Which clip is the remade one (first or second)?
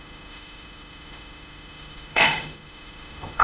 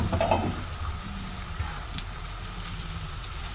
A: first